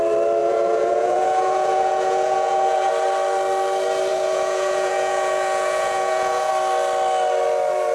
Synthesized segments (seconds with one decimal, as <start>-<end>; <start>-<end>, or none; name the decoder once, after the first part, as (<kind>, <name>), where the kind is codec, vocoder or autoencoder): 0.4-2.9 (vocoder, Vocos); 4.1-6.5

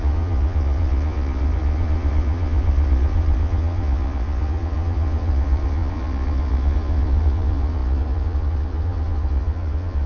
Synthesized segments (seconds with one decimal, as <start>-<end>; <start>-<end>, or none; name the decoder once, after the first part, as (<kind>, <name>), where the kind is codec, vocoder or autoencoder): 0.0-10.1 (vocoder, Vocos)

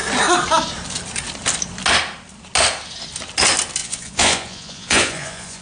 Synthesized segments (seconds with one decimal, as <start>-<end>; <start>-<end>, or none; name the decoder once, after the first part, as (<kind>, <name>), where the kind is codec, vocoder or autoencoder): 3.8-5.6 (vocoder, Vocos)

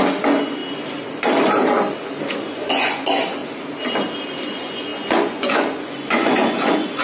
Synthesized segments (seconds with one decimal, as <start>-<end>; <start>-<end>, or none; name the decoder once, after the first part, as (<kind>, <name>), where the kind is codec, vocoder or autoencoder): 0.0-0.6 (vocoder, Vocos); 2.2-3.4; 4.3-7.0

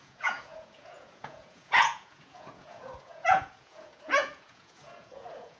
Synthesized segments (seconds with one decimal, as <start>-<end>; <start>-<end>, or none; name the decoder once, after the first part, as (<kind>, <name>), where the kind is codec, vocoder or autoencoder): 0.0-5.6 (vocoder, Vocos)